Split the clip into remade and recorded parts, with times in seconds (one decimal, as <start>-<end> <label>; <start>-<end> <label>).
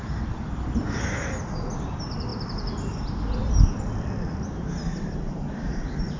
0.0-6.2 recorded